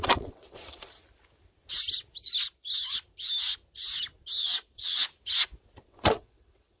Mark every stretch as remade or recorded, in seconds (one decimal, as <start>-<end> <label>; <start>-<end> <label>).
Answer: 0.0-1.0 remade; 1.0-4.4 recorded; 4.4-5.1 remade; 5.1-5.8 recorded; 5.8-6.8 remade